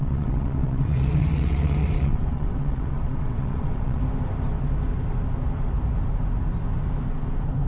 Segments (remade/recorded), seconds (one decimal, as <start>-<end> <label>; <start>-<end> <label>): 0.0-4.0 remade; 4.0-7.7 recorded